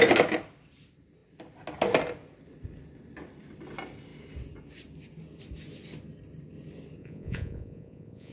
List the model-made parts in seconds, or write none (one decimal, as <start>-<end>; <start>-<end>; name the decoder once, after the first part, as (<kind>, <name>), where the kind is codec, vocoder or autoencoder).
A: 7.0-8.3 (vocoder, Vocos)